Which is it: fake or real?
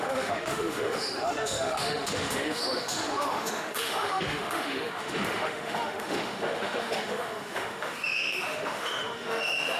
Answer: fake